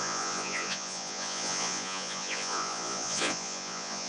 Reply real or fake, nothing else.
fake